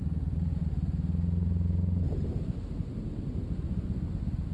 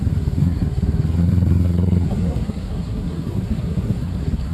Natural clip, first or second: first